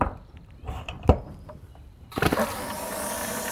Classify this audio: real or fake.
fake